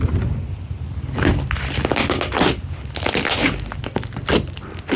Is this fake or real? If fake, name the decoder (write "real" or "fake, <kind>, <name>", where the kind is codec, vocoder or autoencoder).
real